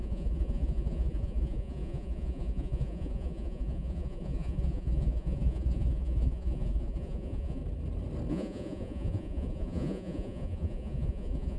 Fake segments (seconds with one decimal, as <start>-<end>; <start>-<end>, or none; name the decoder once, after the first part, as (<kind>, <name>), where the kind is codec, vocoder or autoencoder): 0.0-7.6 (vocoder, Vocos); 8.3-11.6